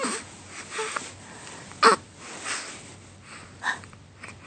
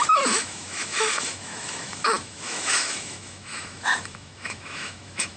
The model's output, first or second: second